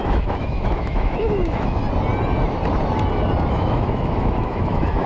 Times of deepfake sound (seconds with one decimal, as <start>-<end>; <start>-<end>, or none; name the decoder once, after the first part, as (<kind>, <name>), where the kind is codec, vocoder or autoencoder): 0.0-1.8 (autoencoder, DAC-VAE); 3.5-5.1